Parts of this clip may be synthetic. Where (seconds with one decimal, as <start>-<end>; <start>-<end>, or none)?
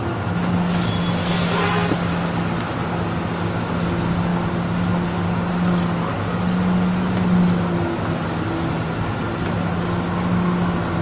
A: 1.2-1.9